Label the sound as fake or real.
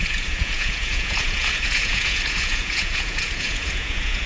fake